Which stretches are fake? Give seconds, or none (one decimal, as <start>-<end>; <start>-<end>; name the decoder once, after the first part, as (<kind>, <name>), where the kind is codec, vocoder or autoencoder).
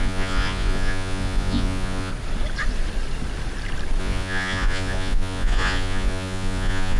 0.0-2.1 (vocoder, Vocos); 4.0-7.0